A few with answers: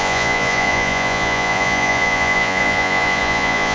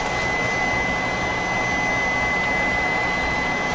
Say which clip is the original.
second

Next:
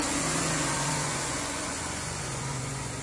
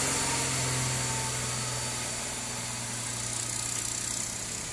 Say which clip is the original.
second